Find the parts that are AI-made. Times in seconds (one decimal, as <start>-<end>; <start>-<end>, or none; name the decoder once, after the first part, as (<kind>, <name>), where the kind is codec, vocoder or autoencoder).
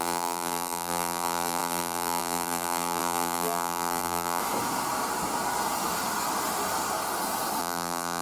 0.0-4.4 (vocoder, BigVGAN v2); 7.6-8.2